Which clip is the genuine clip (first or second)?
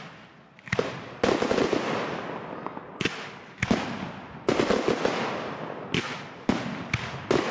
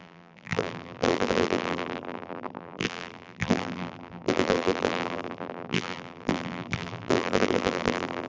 first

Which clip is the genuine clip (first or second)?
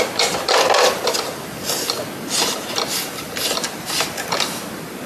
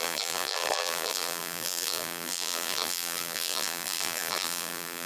first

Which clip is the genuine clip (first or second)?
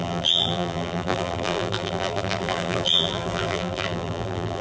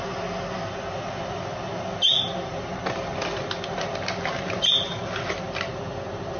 second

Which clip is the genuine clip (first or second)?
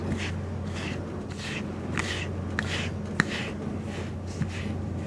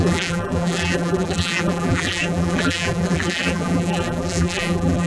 first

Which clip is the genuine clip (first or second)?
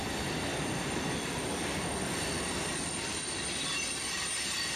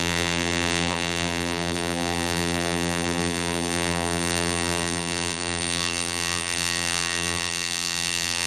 first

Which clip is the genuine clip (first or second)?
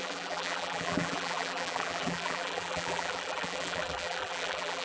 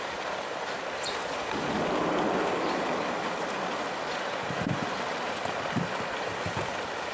second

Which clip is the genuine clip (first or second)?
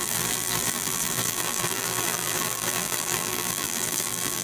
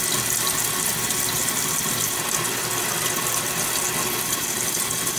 second